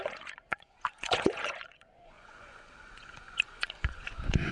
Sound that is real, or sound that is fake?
fake